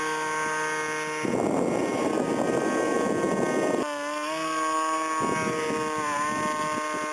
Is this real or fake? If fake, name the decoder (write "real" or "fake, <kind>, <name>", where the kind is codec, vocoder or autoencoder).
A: real